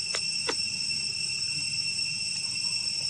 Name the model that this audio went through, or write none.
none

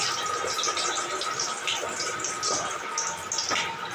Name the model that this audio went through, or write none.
none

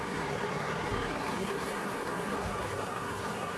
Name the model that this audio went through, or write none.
codec, SNAC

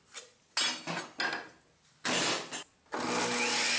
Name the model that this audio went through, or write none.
none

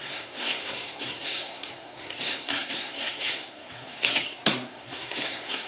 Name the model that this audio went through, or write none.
codec, SNAC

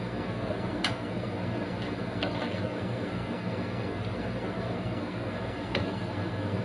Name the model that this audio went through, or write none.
codec, SNAC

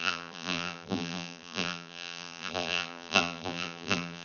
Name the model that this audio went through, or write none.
vocoder, BigVGAN v2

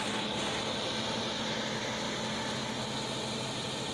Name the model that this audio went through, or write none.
none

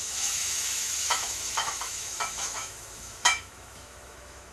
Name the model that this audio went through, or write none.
autoencoder, DAC-VAE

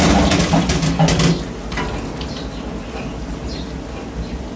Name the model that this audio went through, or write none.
none